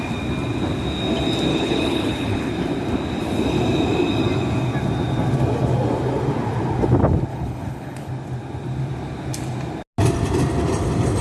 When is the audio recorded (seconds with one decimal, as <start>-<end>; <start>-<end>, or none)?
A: 0.0-1.5; 2.5-7.3; 8.1-11.2